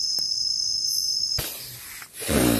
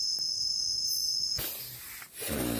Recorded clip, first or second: second